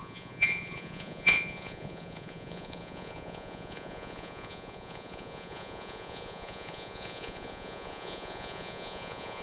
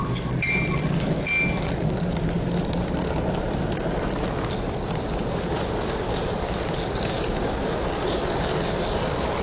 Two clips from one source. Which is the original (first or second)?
second